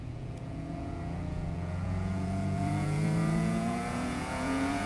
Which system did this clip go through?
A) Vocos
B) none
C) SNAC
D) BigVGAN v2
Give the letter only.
A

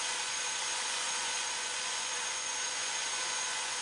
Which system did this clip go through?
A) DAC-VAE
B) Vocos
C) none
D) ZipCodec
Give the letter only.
B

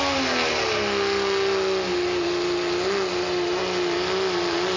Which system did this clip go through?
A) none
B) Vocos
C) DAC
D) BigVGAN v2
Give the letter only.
A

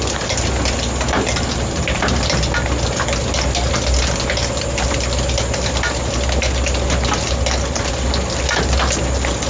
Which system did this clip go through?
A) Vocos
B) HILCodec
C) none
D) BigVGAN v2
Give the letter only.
C